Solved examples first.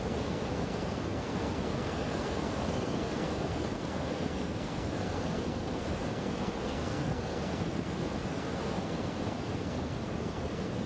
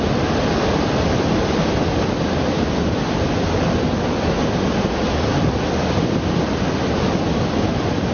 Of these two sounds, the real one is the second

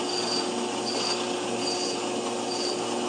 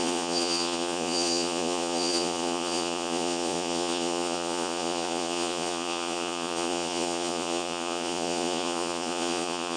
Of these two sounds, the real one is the first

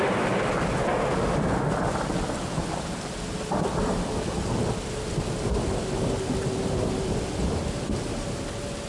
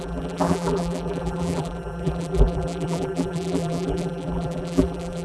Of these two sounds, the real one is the first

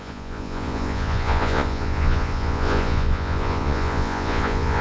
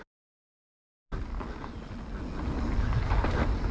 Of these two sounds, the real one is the second